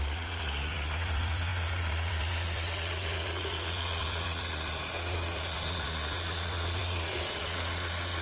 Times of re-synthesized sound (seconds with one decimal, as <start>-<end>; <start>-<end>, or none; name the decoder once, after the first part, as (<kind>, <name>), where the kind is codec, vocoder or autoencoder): 0.0-8.2 (vocoder, Vocos)